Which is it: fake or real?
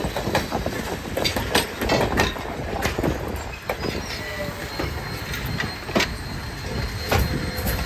real